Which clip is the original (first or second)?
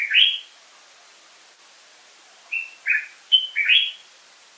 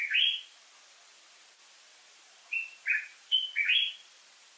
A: first